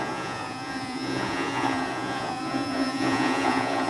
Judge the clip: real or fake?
fake